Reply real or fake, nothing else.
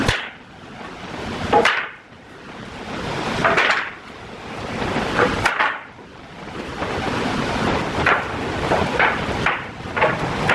real